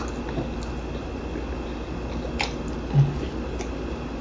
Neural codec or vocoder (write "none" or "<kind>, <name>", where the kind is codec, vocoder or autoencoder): none